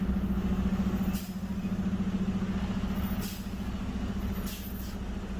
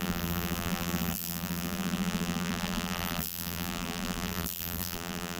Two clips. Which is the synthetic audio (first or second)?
second